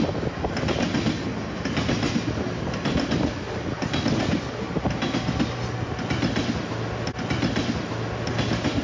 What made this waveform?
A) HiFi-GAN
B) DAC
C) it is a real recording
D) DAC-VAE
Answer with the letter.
C